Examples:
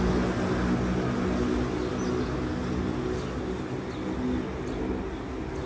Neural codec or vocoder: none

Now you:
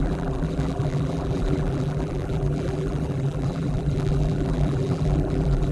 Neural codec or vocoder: vocoder, BigVGAN v2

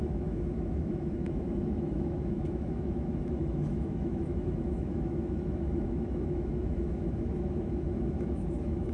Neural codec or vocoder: autoencoder, DAC-VAE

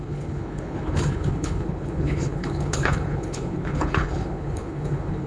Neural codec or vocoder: codec, HILCodec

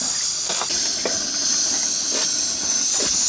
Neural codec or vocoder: none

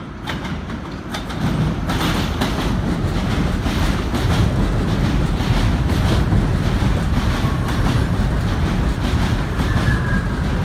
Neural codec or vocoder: none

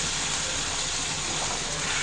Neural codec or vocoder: none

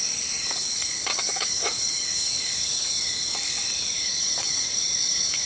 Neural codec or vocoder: codec, DAC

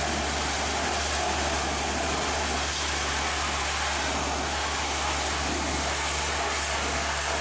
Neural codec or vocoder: none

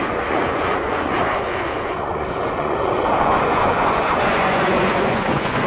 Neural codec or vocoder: vocoder, Vocos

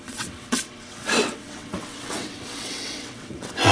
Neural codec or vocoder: vocoder, WaveNeXt